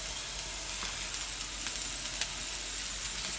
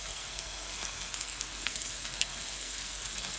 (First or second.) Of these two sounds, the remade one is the second